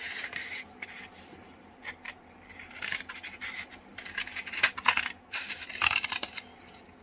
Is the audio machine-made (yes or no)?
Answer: yes